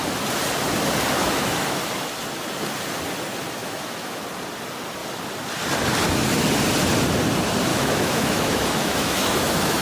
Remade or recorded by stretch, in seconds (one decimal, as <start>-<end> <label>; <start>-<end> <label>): 0.0-1.2 recorded; 1.2-1.8 remade; 1.8-3.6 recorded; 3.6-4.2 remade; 4.2-7.7 recorded; 7.7-9.8 remade